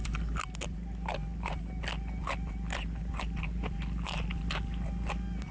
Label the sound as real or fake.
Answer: real